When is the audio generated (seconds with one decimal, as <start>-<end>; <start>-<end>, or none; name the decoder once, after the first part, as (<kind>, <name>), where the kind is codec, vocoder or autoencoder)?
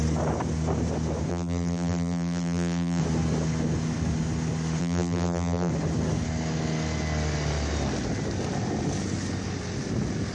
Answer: 1.3-3.0 (vocoder, BigVGAN v2); 4.8-5.7